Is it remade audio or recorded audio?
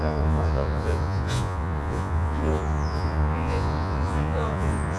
remade